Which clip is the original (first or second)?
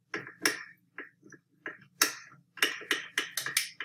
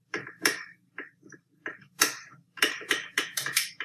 first